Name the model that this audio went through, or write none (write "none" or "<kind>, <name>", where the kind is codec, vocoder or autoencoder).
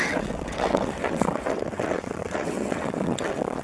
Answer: vocoder, WaveNeXt